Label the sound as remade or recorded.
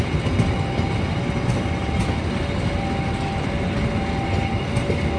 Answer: recorded